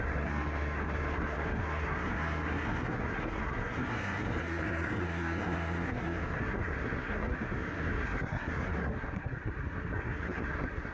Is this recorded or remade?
remade